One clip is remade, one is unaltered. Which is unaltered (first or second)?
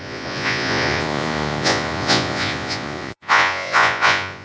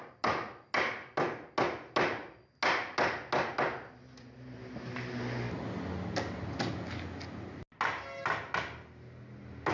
second